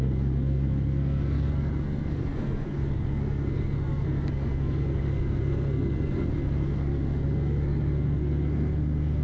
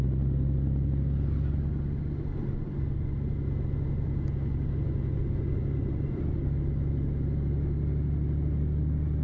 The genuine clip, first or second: second